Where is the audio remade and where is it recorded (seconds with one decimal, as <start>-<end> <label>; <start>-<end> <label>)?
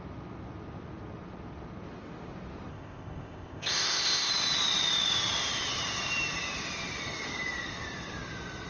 0.0-2.7 recorded; 2.7-4.3 remade; 4.3-8.7 recorded